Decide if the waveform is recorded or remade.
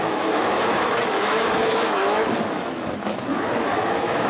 remade